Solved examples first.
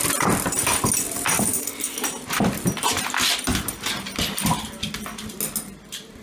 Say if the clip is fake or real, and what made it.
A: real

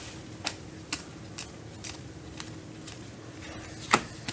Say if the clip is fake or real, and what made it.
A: real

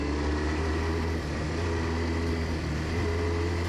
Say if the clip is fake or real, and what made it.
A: real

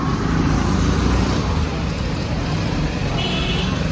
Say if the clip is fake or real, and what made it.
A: fake, vocoder, BigVGAN v2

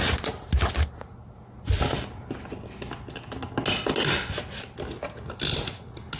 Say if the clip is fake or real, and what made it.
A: real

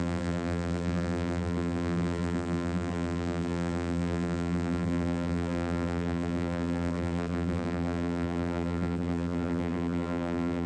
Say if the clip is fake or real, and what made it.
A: fake, vocoder, BigVGAN v2